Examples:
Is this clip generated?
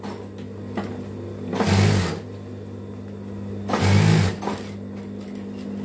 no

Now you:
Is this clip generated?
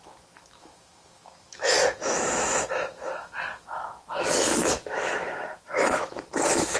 yes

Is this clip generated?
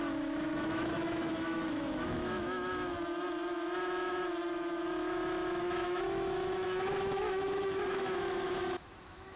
yes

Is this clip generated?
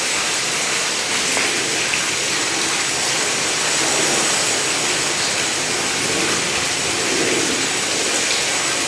no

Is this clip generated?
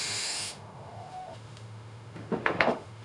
yes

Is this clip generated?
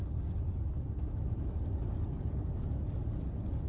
no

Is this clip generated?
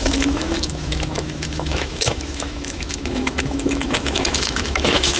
yes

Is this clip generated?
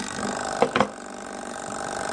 no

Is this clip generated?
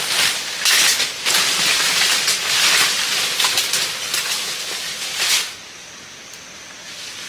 no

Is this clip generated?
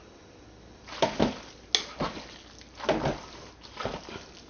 no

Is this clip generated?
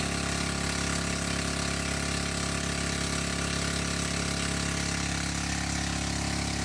no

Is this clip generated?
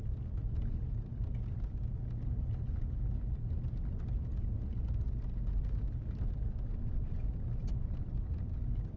no